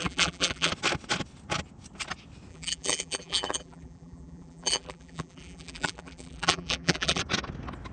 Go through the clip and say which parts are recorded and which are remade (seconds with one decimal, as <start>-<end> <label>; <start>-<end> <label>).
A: 0.0-0.7 remade; 0.7-2.5 recorded; 2.5-7.2 remade; 7.2-7.9 recorded